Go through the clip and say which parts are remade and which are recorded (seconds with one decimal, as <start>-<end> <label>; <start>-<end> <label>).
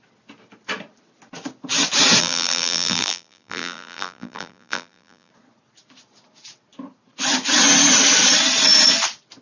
0.0-2.2 recorded; 2.2-5.3 remade; 5.3-9.4 recorded